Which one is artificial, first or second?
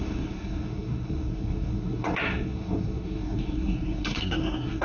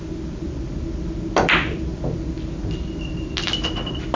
first